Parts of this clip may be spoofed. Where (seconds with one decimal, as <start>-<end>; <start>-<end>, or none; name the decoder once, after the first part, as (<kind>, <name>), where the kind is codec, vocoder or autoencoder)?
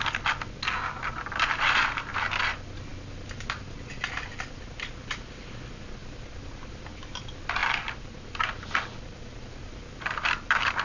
none